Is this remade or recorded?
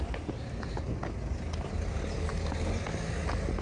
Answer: recorded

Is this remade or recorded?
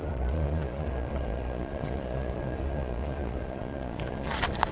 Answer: remade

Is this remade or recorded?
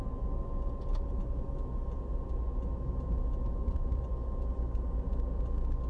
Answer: recorded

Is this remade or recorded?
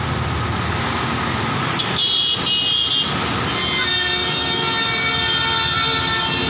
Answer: recorded